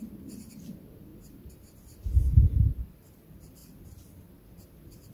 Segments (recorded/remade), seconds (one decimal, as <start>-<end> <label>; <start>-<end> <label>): 0.0-1.1 remade; 1.1-2.7 recorded; 2.7-5.1 remade